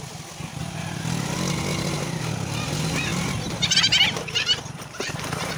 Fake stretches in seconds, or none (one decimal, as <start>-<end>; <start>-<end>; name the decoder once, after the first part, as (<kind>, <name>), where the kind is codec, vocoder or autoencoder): none